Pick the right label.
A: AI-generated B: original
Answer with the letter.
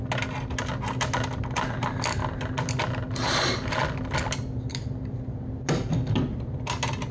B